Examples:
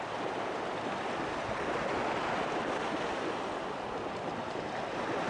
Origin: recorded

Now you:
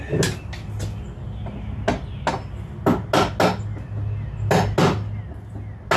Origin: recorded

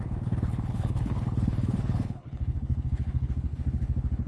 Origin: remade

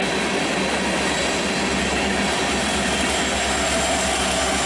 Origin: recorded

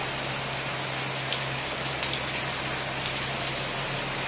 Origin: recorded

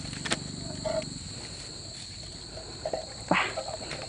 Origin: recorded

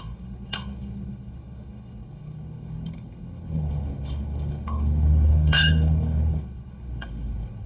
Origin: remade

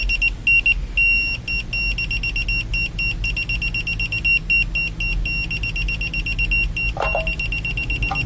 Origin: recorded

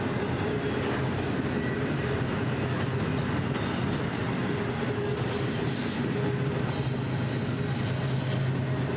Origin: recorded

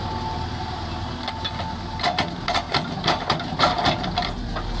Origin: recorded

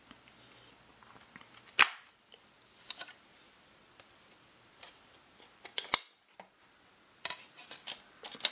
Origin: recorded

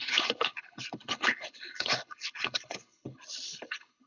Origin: remade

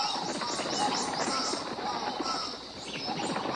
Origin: recorded